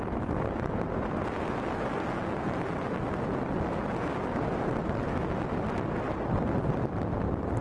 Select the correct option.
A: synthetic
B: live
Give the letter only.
B